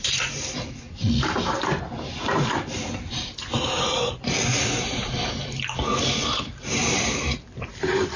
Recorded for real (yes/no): no